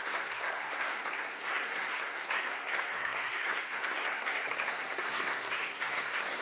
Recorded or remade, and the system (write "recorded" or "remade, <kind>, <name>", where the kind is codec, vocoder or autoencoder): remade, codec, SNAC